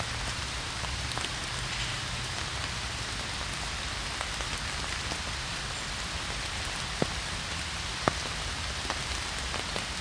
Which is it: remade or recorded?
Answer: recorded